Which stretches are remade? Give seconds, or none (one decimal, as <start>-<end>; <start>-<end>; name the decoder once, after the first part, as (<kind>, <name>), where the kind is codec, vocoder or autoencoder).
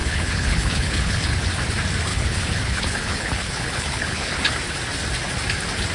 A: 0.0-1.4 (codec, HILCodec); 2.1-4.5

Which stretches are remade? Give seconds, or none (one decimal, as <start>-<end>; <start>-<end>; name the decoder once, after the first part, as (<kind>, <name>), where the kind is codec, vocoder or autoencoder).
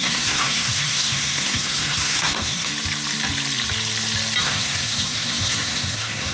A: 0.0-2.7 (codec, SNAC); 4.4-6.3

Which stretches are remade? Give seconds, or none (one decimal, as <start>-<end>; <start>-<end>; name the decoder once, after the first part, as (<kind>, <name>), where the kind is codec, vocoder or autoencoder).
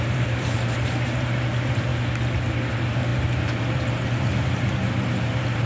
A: 0.0-1.9 (vocoder, BigVGAN v2); 2.7-5.7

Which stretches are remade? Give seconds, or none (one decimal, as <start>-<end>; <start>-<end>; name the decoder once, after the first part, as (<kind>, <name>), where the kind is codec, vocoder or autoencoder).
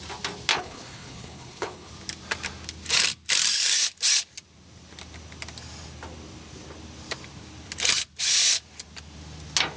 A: 0.5-1.9 (codec, HILCodec)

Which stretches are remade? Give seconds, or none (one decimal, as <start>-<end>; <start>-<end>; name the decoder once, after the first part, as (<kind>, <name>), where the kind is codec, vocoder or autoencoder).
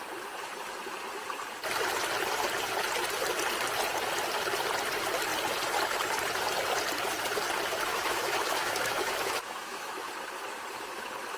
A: 7.9-10.1 (autoencoder, DAC-VAE)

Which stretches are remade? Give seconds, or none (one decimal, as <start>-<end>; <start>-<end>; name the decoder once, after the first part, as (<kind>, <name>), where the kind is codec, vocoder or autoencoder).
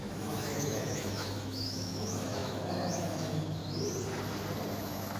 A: 0.0-3.6 (autoencoder, DAC-VAE); 4.7-5.2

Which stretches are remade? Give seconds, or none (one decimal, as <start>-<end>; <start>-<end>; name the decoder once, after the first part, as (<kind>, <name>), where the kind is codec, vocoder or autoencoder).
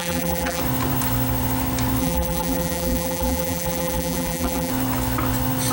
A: 0.0-0.6 (vocoder, BigVGAN v2); 2.0-4.7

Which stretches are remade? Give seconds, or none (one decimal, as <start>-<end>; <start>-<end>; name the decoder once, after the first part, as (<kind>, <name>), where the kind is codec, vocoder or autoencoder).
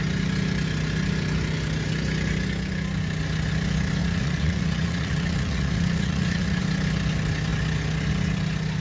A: 4.0-6.6 (vocoder, Vocos)